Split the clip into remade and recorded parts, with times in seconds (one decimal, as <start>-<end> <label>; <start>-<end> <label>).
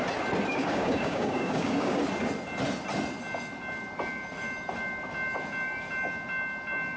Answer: 0.0-0.5 recorded; 0.5-2.0 remade; 2.0-7.0 recorded